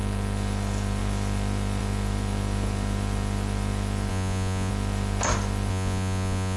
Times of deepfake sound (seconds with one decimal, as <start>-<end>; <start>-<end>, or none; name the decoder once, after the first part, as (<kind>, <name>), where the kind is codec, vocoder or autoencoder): 4.1-4.7 (vocoder, Vocos); 5.7-6.6

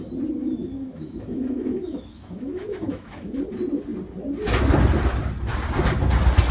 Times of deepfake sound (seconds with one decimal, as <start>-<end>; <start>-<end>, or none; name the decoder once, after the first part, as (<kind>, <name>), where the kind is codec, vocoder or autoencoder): 0.4-3.4 (autoencoder, DAC-VAE)